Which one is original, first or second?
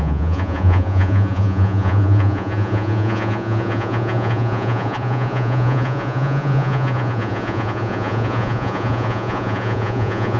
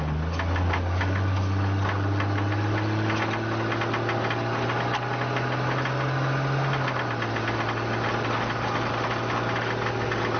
second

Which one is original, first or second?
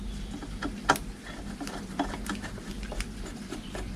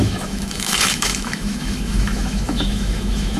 first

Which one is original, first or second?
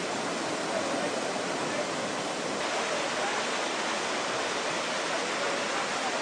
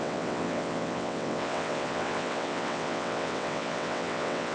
first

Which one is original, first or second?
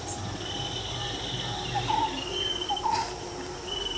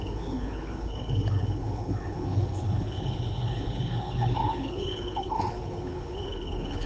first